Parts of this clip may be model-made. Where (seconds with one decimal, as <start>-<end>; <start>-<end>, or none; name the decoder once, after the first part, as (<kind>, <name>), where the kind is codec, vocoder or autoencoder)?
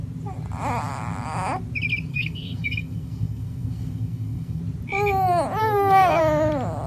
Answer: 2.1-4.6 (codec, SNAC); 5.6-6.2